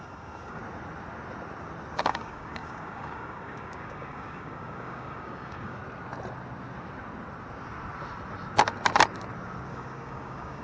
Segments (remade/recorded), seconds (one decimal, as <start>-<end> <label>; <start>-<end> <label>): 0.0-0.6 remade; 0.6-2.0 recorded; 2.0-5.8 remade; 5.8-9.7 recorded; 9.7-10.6 remade